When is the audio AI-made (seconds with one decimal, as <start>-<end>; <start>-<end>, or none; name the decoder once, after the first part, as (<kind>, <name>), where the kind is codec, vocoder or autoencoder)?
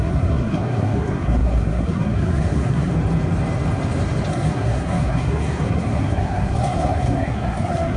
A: 0.0-2.9 (codec, SNAC); 4.3-8.0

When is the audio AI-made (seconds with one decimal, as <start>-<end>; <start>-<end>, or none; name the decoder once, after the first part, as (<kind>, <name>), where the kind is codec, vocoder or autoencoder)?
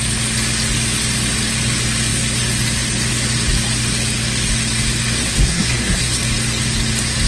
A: 5.2-6.2 (codec, SNAC)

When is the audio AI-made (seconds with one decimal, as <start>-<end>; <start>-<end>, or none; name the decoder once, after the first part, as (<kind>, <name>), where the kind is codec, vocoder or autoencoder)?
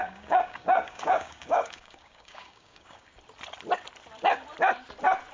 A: 0.0-3.2 (codec, DAC)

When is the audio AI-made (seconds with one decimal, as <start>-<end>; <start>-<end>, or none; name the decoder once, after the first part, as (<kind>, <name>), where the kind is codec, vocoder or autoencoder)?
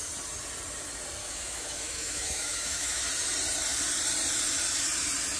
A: 1.2-3.0 (autoencoder, DAC-VAE)